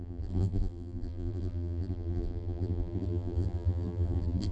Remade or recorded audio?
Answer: remade